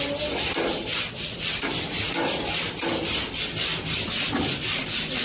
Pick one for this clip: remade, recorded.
recorded